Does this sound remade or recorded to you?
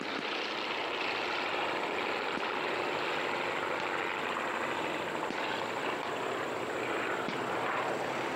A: remade